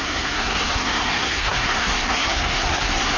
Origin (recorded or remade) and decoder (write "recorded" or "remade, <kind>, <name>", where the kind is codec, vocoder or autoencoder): remade, codec, SNAC